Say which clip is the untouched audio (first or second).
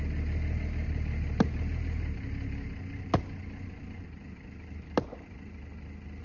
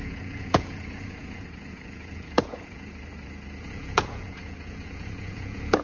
first